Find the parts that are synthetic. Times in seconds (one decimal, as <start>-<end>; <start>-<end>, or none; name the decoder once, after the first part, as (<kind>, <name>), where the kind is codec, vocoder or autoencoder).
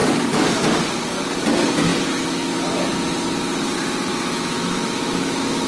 4.1-5.7 (autoencoder, DAC-VAE)